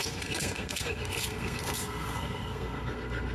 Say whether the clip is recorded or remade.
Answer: remade